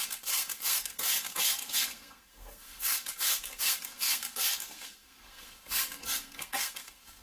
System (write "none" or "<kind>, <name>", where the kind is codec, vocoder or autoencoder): codec, SNAC